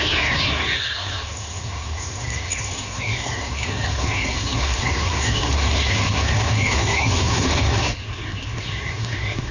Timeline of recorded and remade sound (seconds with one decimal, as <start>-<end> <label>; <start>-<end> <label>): 0.0-9.5 remade